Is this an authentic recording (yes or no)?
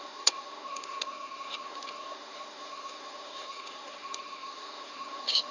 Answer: no